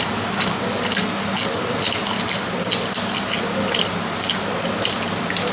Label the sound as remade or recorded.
recorded